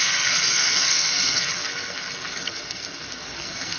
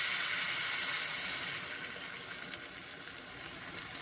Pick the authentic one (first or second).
second